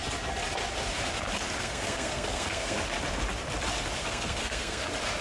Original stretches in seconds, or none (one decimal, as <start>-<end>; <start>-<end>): 0.0-1.6; 2.8-4.0; 4.8-5.2

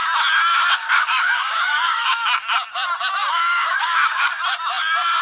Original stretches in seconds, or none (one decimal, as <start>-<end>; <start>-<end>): 0.0-0.7; 2.2-3.3; 4.3-5.2

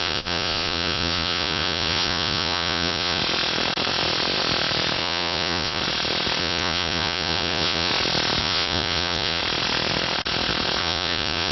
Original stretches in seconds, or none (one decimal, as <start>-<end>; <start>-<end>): 3.2-5.0; 5.8-6.4; 7.9-8.4; 9.4-10.8

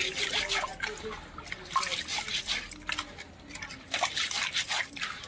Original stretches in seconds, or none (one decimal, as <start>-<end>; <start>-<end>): 0.0-5.3

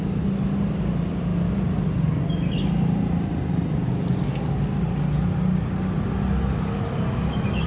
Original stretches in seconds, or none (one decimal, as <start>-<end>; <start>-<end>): 0.0-7.7